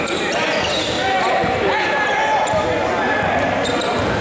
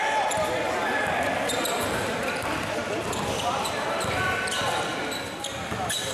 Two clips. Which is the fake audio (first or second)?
second